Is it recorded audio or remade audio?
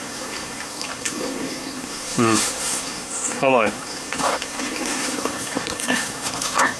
remade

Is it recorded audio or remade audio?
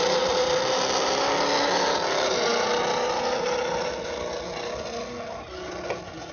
recorded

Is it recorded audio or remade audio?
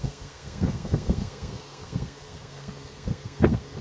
remade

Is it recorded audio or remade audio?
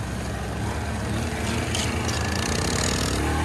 recorded